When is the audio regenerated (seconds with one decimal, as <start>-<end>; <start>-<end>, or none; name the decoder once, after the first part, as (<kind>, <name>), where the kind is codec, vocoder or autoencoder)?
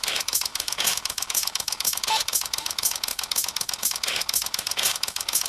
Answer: 0.0-5.5 (autoencoder, DAC-VAE)